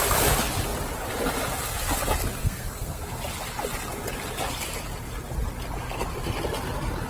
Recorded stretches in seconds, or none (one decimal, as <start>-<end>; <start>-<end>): 0.0-2.4; 3.0-7.1